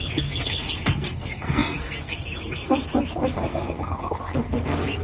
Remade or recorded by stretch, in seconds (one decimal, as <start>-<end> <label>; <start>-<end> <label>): 0.0-5.0 remade